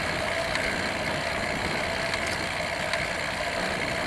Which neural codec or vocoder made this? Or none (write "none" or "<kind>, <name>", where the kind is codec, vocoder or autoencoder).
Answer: none